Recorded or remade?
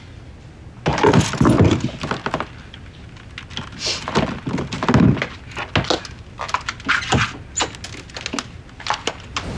recorded